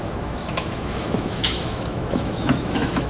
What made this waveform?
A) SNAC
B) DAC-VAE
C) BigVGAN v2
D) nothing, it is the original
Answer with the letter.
B